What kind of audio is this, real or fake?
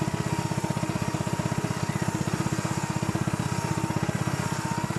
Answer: real